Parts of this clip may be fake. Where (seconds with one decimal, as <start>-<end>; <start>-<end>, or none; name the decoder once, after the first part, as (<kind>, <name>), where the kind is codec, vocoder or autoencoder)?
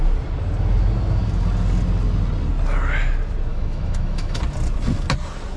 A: 3.5-4.4 (autoencoder, DAC-VAE)